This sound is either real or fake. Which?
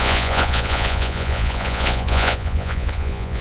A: fake